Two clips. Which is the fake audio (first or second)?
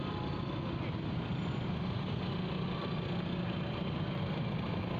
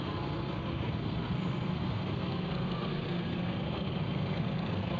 second